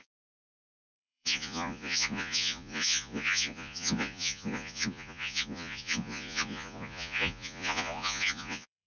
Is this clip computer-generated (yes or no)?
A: yes